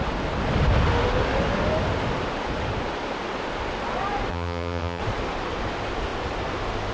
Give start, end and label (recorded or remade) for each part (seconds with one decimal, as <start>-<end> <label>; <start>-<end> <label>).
0.0-4.3 recorded; 4.3-5.0 remade; 5.0-6.9 recorded